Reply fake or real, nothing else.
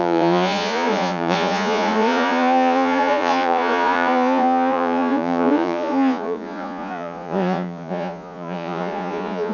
fake